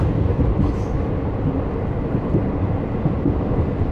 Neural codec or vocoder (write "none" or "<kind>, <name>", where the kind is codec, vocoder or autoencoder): none